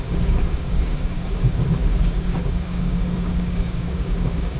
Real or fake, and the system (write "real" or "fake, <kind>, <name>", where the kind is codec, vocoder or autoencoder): fake, codec, DAC